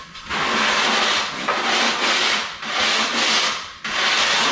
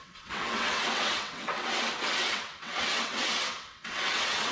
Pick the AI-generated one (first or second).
second